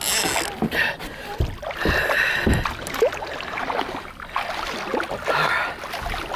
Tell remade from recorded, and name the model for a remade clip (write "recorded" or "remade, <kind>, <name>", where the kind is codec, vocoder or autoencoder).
recorded